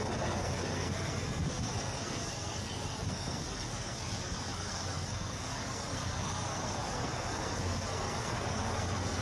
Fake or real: fake